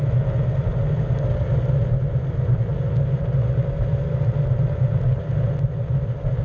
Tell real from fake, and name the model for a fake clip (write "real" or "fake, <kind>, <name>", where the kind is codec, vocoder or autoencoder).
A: real